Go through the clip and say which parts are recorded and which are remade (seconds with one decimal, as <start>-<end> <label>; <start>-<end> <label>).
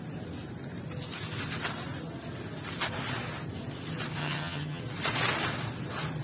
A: 0.0-4.2 recorded; 4.2-4.8 remade; 4.8-6.2 recorded